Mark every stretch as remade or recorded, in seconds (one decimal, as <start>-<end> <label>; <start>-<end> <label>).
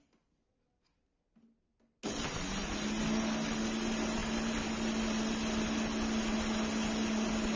0.0-7.6 recorded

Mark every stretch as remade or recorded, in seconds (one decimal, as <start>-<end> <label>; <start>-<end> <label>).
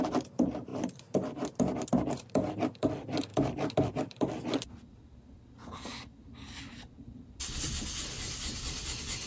0.0-9.3 recorded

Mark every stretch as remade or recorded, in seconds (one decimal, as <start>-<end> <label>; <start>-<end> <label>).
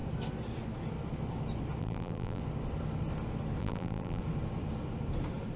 0.0-1.8 recorded; 1.8-2.4 remade; 2.4-3.6 recorded; 3.6-4.2 remade; 4.2-5.6 recorded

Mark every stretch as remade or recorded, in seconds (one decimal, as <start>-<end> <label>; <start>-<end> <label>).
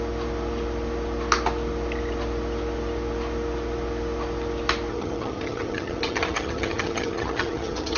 0.0-4.9 recorded; 4.9-8.0 remade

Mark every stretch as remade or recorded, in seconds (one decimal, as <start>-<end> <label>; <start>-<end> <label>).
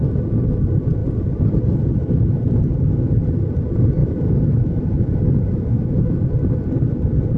0.0-4.0 recorded; 4.0-6.1 remade; 6.1-7.4 recorded